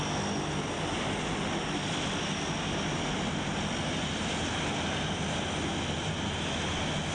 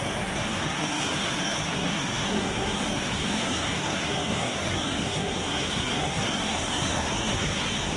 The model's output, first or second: second